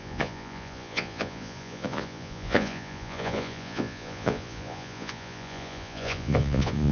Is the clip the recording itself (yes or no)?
no